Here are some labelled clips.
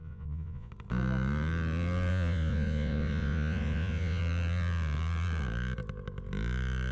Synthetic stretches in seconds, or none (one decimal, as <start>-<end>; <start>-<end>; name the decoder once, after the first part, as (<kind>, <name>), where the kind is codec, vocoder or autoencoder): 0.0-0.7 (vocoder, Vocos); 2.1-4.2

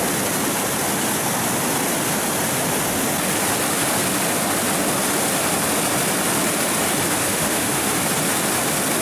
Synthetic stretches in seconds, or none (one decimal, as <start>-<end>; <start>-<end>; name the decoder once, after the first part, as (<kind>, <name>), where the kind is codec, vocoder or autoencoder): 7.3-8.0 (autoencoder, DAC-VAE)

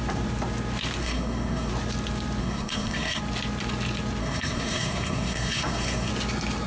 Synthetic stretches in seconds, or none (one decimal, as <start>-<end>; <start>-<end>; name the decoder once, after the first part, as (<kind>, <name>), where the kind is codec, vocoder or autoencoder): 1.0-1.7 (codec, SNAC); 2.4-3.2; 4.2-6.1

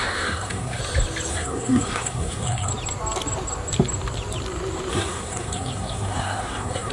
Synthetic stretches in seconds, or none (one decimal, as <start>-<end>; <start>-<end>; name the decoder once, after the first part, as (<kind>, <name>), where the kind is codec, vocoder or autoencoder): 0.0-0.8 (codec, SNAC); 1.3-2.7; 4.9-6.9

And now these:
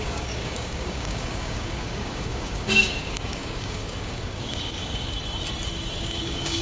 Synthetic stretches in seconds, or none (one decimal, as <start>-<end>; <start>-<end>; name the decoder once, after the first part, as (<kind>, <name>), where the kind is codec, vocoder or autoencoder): 0.0-5.1 (codec, DAC); 6.0-6.6

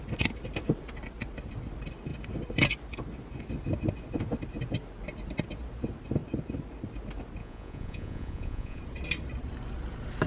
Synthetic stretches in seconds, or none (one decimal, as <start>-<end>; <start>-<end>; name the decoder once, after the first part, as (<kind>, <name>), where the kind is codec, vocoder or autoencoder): 7.4-8.8 (vocoder, Vocos)

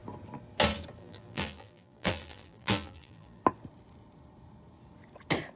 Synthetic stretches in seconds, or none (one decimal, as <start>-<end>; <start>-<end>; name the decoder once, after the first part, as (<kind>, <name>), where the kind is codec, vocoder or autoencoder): 1.0-3.4 (vocoder, BigVGAN v2)

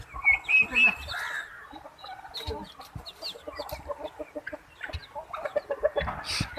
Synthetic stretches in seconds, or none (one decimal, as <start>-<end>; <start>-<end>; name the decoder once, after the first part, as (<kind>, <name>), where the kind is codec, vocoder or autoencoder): none